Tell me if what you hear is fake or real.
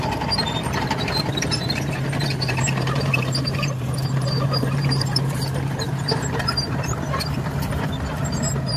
fake